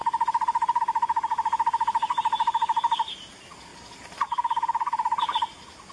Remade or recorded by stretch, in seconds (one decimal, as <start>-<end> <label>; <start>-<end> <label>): 0.0-0.8 remade; 0.8-1.3 recorded; 1.3-3.3 remade; 3.3-3.7 recorded; 3.7-5.2 remade; 5.2-5.9 recorded

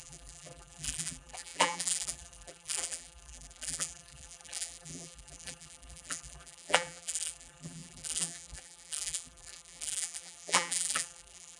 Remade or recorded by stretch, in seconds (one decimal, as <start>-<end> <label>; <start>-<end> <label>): 0.0-11.6 remade

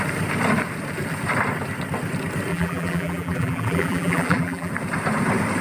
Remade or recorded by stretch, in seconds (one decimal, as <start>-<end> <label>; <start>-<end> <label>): 0.0-2.5 recorded; 2.5-4.7 remade; 4.7-5.6 recorded

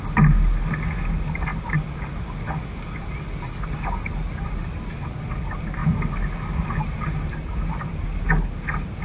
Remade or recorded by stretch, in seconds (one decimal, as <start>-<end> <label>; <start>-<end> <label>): 0.0-9.0 recorded

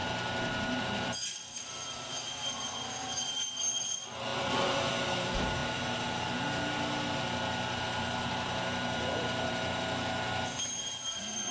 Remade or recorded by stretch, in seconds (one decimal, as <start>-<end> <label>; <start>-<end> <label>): 0.0-0.8 recorded; 0.8-5.6 remade; 5.6-7.8 recorded; 7.8-11.5 remade